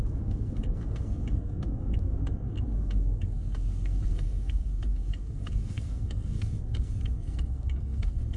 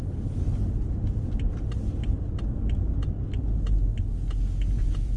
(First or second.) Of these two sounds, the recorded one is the second